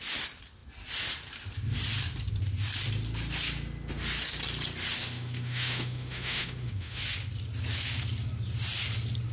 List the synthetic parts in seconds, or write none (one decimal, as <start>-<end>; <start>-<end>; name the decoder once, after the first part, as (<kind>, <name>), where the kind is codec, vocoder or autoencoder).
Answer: 5.0-7.0 (autoencoder, DAC-VAE)